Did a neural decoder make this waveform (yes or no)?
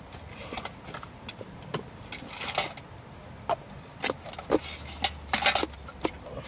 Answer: no